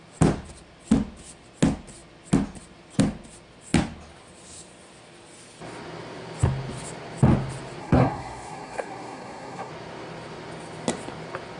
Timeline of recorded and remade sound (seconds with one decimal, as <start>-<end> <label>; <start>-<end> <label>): 0.0-7.8 recorded; 7.8-9.7 remade; 9.7-11.6 recorded